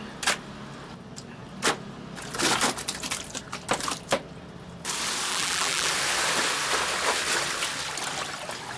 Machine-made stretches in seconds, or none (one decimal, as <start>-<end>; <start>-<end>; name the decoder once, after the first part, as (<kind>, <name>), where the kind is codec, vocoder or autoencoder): 5.3-5.9 (vocoder, BigVGAN v2)